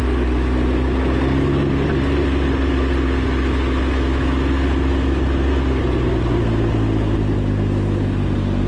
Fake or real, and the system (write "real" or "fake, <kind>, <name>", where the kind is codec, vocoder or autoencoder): real